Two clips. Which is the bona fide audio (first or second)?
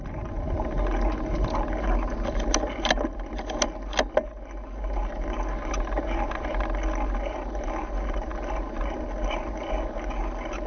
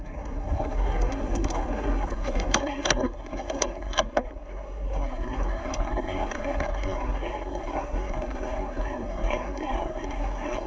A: first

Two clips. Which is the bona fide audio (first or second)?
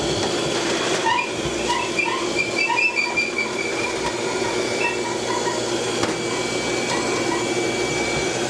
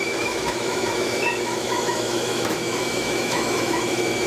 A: first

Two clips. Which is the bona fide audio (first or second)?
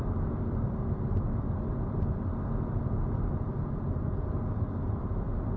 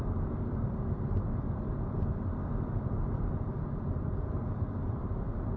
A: first